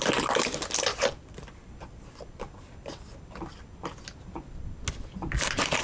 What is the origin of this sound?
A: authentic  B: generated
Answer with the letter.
A